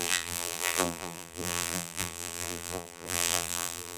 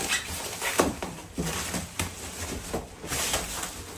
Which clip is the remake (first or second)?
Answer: first